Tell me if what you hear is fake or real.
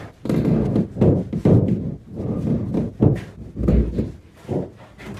real